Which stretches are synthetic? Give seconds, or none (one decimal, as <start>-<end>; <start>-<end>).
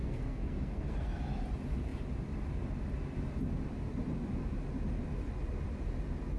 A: 0.0-1.2